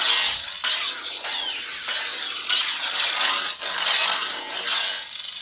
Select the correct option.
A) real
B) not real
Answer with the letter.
A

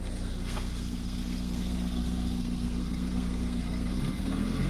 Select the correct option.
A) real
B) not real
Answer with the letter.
B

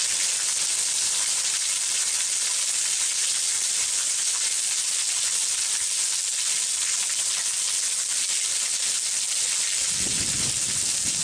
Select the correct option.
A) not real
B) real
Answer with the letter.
B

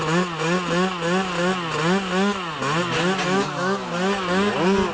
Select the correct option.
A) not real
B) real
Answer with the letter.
B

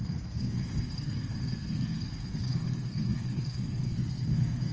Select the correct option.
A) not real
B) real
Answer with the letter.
A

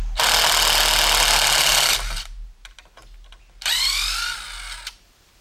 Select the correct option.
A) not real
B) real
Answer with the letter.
B